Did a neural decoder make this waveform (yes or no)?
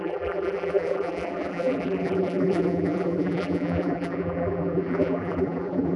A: yes